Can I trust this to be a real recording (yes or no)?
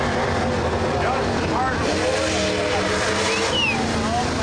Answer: yes